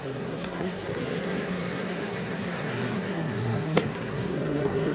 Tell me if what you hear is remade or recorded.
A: remade